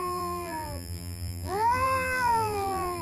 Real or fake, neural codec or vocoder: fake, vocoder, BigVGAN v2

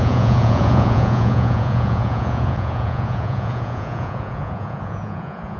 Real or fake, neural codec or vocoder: fake, vocoder, Vocos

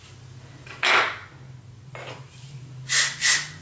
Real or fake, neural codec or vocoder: real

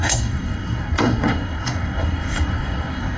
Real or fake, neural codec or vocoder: fake, codec, SNAC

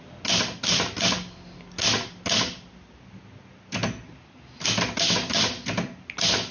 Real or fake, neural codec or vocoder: real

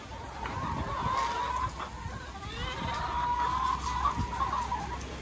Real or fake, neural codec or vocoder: real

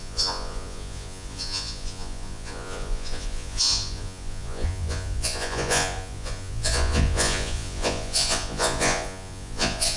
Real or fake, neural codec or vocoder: fake, vocoder, Vocos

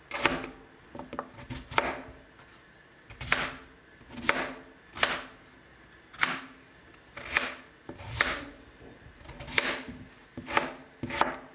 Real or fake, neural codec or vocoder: real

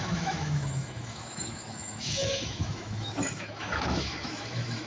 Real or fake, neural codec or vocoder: fake, autoencoder, DAC-VAE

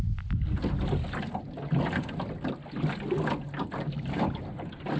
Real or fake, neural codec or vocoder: real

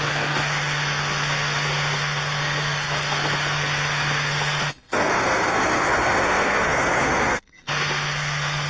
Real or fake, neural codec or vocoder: fake, codec, SNAC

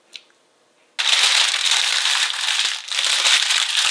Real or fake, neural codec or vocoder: real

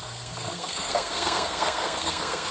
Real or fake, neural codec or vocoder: fake, codec, SNAC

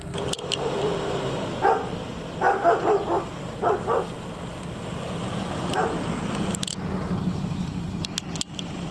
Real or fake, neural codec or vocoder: real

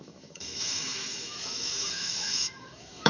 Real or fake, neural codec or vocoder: fake, autoencoder, DAC-VAE